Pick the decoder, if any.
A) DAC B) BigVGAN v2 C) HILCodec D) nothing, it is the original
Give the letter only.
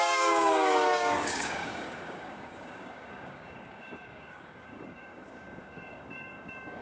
A